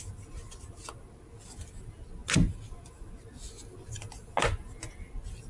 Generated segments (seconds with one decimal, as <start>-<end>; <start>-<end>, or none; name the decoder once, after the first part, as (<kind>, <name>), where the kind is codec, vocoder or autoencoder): none